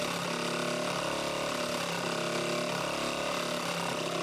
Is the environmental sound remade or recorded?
recorded